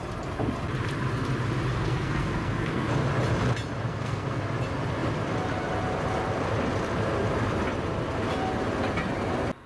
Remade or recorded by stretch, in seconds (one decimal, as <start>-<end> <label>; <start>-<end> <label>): 0.0-1.7 recorded; 1.7-2.9 remade; 2.9-3.9 recorded; 3.9-4.4 remade; 4.4-9.7 recorded